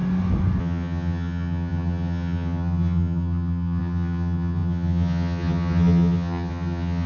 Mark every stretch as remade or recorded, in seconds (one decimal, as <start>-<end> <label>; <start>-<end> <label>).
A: 0.0-0.6 recorded; 0.6-7.1 remade